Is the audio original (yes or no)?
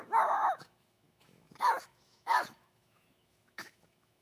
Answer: no